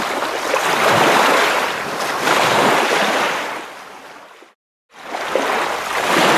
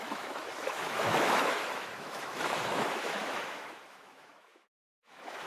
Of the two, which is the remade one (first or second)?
second